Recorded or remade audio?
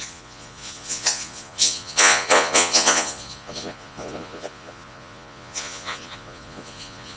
remade